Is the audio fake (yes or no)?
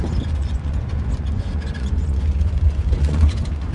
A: yes